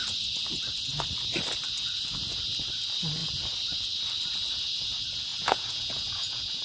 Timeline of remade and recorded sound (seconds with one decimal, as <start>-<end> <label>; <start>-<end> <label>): 0.0-5.3 recorded; 5.3-6.6 remade